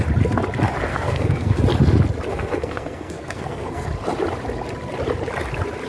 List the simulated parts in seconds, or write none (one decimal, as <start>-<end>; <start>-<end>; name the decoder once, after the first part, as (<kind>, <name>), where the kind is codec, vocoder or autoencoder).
0.9-1.6 (codec, SNAC); 2.3-3.9